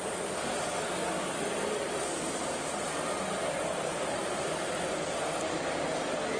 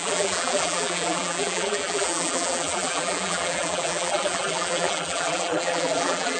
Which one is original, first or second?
first